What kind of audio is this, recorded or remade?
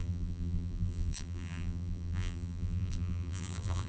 remade